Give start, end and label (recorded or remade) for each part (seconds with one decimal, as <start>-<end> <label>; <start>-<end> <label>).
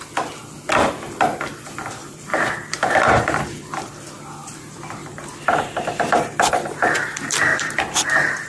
0.0-2.0 recorded; 2.0-3.9 remade; 3.9-4.4 recorded; 4.4-6.6 remade; 6.6-7.5 recorded; 7.5-8.5 remade